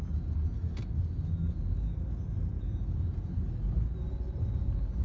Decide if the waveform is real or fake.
real